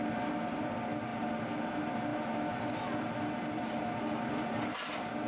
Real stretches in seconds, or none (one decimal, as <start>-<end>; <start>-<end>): 0.0-5.3